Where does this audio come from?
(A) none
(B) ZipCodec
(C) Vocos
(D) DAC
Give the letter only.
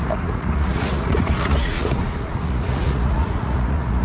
C